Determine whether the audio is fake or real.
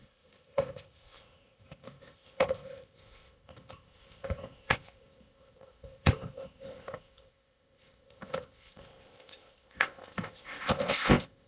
fake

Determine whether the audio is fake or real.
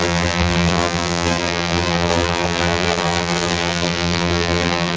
fake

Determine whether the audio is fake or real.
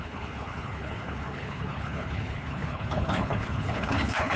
fake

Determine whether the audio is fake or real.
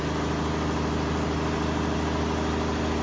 real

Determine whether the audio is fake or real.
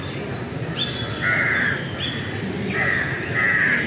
real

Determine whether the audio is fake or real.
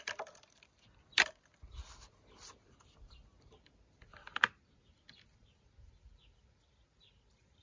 real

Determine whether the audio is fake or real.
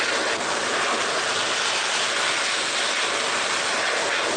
real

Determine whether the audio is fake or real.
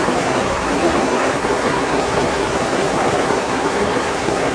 fake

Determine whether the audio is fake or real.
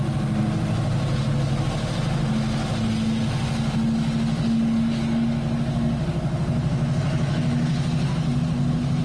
real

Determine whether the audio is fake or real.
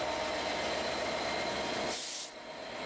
real